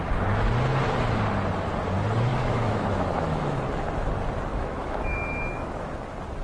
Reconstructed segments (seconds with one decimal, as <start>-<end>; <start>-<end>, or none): 2.3-3.6; 4.5-5.9